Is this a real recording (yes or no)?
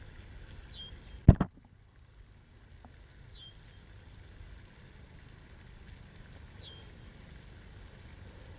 yes